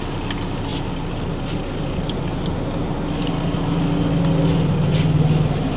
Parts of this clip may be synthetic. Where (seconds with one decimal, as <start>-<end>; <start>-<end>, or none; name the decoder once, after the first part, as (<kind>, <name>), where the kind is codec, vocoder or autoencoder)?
none